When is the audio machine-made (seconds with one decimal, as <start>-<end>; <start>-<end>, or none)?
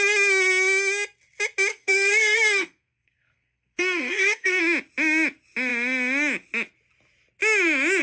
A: 1.7-4.6